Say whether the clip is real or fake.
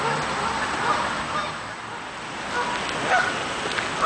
real